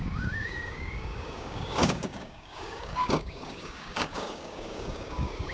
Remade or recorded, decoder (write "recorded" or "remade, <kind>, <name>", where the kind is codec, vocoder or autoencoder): remade, codec, DAC